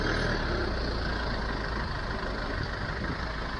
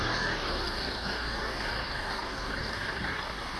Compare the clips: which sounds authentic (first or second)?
first